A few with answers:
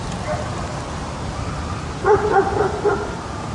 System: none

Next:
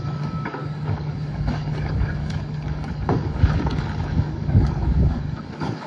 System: codec, DAC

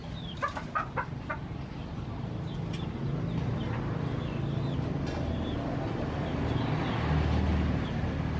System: none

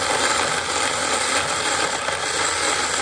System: none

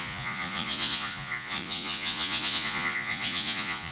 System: vocoder, Vocos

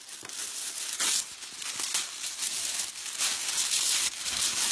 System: none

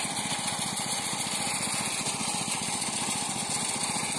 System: none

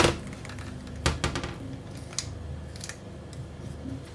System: none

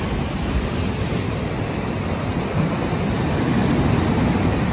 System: none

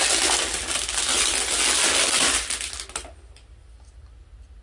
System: none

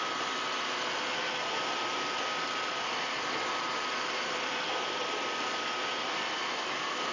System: none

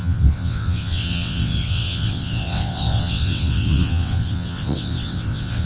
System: vocoder, WaveNeXt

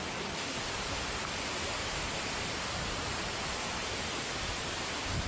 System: none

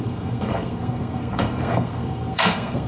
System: codec, SNAC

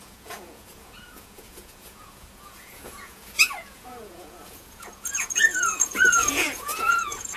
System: vocoder, Vocos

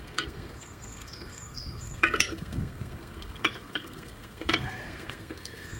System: codec, SNAC